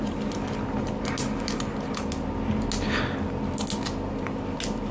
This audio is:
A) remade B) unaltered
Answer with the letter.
B